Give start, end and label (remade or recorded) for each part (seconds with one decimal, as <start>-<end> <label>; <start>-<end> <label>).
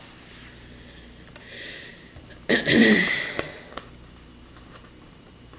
0.0-5.6 remade